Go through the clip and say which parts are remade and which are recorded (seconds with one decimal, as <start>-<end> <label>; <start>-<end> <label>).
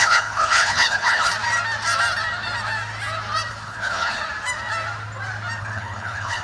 0.0-1.3 remade; 1.3-3.5 recorded; 3.5-4.2 remade; 4.2-5.6 recorded; 5.6-6.4 remade